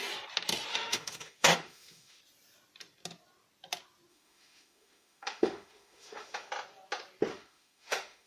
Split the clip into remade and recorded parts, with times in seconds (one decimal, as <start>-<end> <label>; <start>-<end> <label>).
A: 0.0-0.7 recorded; 0.7-2.2 remade; 2.2-4.1 recorded; 4.1-6.5 remade; 6.5-7.3 recorded; 7.3-8.3 remade